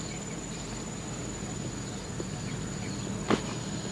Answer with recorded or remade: recorded